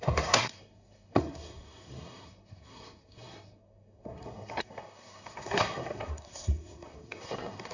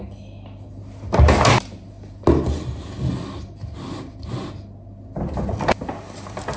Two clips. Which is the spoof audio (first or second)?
first